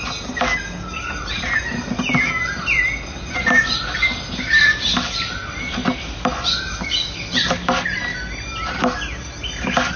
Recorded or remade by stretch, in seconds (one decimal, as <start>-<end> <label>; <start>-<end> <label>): 0.0-10.0 recorded